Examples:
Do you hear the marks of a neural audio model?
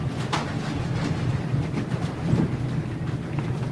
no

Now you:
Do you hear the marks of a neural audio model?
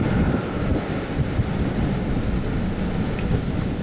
no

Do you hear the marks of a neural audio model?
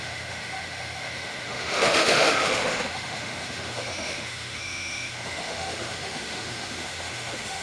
yes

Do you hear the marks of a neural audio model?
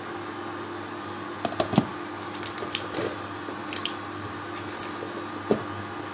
no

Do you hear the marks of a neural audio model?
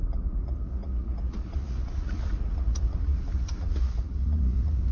yes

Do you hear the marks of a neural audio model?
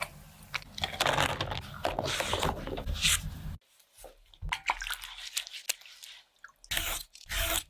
no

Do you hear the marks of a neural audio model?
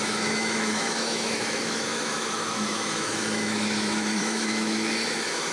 yes